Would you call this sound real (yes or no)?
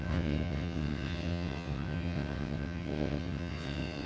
no